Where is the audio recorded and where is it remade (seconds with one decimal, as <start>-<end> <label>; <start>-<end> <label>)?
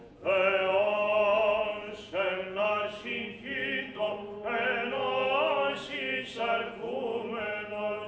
0.0-3.9 remade; 3.9-5.7 recorded; 5.7-8.1 remade